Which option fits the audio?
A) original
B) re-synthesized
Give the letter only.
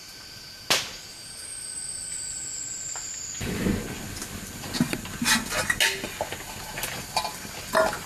A